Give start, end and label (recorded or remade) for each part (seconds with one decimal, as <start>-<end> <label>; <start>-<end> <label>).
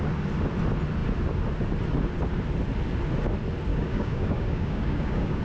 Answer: 0.0-3.7 recorded; 3.7-5.4 remade